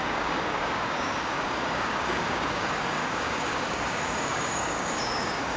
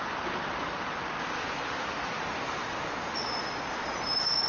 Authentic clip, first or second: second